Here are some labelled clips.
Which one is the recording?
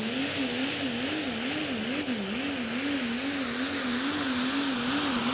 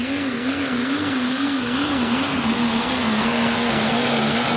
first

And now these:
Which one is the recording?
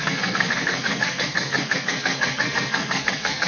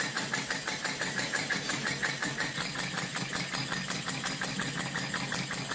second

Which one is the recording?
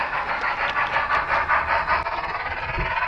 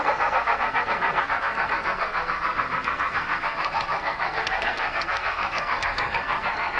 first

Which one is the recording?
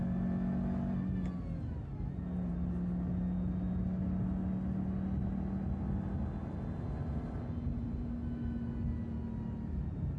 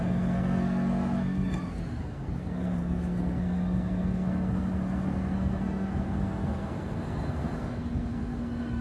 first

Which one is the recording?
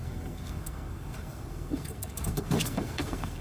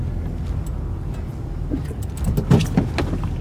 second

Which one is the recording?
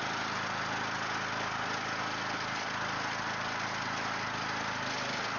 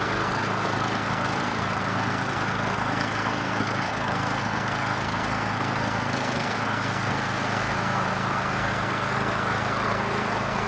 first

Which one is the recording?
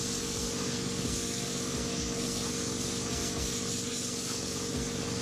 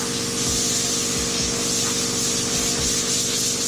second